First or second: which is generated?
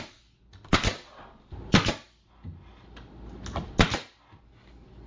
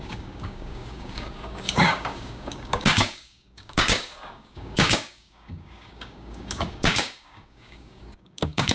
second